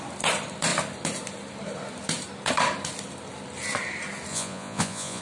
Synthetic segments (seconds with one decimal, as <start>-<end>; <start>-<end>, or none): 4.3-5.2